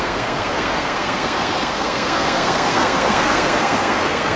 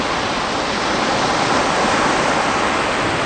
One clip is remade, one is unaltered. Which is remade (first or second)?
first